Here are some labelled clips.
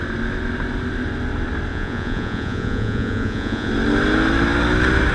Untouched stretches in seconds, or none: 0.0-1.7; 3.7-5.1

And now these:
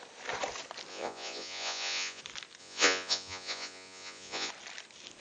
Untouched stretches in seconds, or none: 0.0-0.9; 2.2-2.6; 4.5-5.2

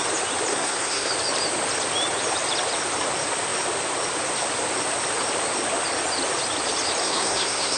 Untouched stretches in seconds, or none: 0.0-0.5; 1.1-7.0